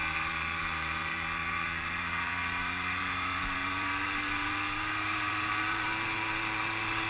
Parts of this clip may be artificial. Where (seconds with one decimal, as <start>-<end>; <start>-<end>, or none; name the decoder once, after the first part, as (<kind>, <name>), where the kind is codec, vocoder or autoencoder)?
0.0-7.1 (vocoder, BigVGAN v2)